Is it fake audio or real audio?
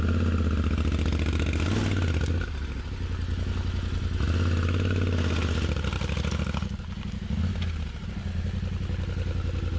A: real